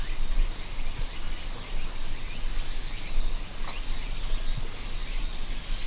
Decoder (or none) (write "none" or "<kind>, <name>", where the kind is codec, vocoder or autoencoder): none